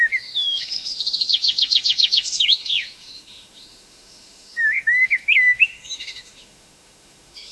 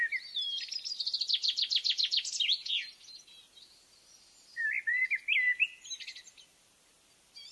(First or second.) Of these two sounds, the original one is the second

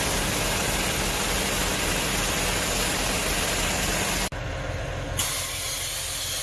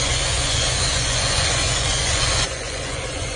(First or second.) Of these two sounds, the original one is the first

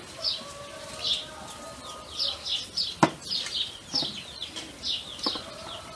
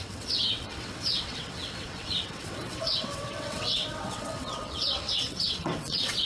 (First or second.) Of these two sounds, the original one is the first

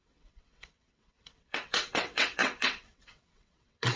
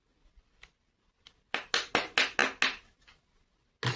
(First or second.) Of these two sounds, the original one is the second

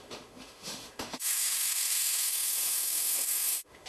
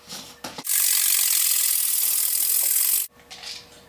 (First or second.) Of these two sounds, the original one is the second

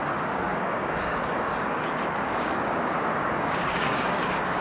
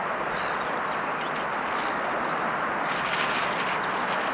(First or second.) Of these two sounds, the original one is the second